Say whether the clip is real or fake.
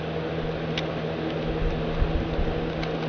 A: real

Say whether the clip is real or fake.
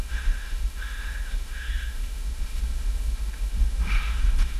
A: fake